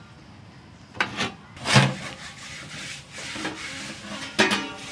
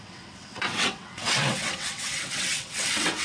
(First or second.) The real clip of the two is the first